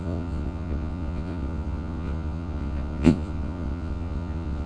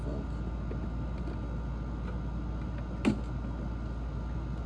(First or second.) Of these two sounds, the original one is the second